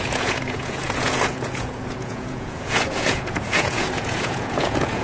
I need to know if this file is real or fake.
fake